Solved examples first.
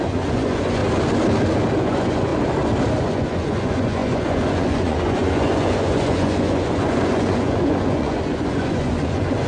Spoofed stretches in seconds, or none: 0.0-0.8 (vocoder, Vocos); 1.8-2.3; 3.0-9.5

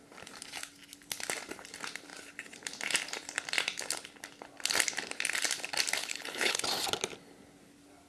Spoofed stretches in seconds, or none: 6.0-6.6 (codec, HILCodec)

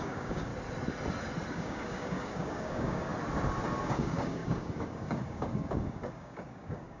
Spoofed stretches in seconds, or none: 0.0-0.5 (codec, DAC); 1.5-3.1; 3.8-7.0

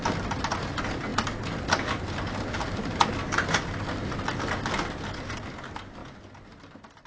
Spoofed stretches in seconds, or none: none

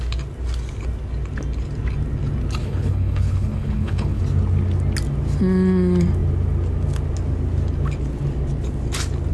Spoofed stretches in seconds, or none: 2.6-4.2 (codec, HILCodec)

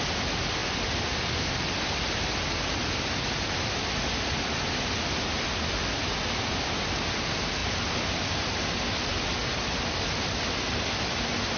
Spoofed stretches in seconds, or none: none